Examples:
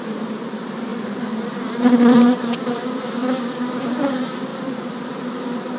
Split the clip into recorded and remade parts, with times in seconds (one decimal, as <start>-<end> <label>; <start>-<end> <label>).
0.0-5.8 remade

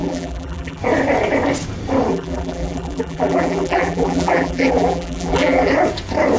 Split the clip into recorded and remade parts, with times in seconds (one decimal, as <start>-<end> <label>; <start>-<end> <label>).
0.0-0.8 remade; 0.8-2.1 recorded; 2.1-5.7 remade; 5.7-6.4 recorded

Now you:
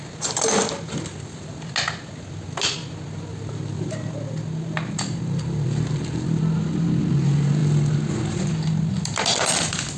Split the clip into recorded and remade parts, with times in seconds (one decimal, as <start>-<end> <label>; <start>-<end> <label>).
0.0-3.3 recorded; 3.3-3.9 remade; 3.9-7.6 recorded; 7.6-8.4 remade; 8.4-10.0 recorded

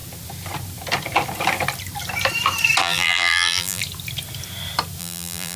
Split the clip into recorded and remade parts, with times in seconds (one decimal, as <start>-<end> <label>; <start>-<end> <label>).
0.0-2.8 recorded; 2.8-3.8 remade; 3.8-5.0 recorded; 5.0-5.6 remade

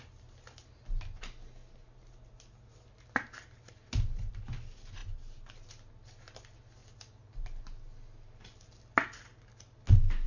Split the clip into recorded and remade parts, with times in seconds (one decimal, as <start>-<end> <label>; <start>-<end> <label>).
0.0-10.3 recorded

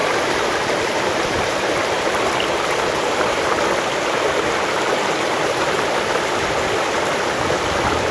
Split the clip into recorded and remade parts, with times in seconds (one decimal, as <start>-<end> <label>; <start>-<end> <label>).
0.0-1.5 remade; 1.5-8.1 recorded